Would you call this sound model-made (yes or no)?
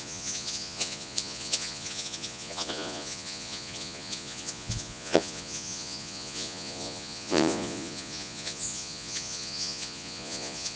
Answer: yes